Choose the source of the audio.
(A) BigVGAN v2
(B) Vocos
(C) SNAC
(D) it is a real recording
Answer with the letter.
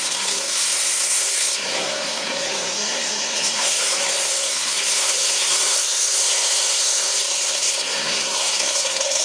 C